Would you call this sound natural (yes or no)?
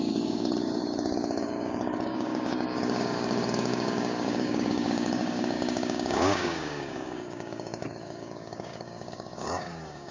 no